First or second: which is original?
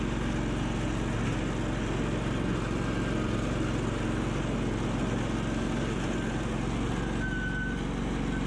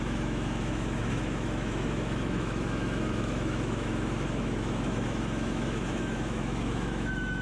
first